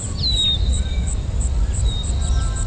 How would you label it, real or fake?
fake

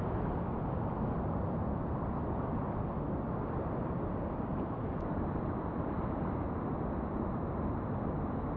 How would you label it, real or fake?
real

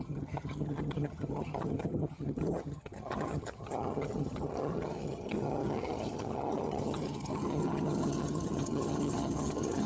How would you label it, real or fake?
fake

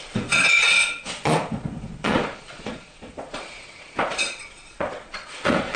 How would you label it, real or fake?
fake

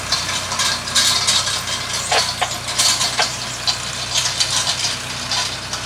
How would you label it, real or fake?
real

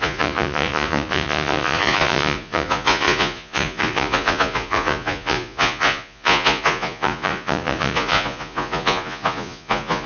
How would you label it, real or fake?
fake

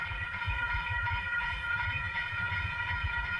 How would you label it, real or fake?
fake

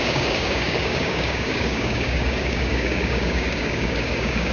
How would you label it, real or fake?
fake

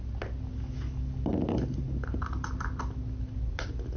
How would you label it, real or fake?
real